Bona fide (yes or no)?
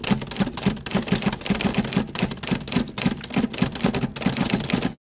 yes